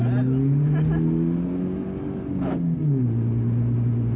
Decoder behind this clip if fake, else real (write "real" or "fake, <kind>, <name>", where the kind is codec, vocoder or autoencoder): real